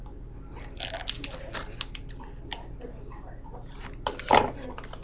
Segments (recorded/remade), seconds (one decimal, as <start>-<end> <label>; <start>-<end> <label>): 0.0-5.0 recorded